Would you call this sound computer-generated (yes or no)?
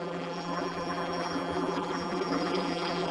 yes